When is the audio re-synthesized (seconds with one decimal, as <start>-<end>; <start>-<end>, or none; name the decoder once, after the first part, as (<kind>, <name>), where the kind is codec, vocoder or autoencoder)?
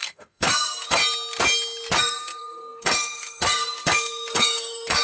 0.0-1.0 (codec, SNAC); 2.0-5.0